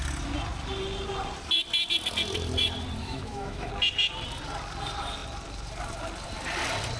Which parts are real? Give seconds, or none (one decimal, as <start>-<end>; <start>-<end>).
0.0-3.0; 3.7-7.0